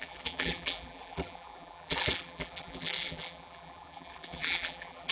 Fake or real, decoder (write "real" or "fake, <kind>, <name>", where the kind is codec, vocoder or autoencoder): fake, vocoder, BigVGAN v2